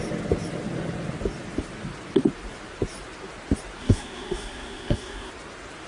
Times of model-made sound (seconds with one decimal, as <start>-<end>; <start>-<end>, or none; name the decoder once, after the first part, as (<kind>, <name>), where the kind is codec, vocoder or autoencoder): 3.8-5.3 (codec, SNAC)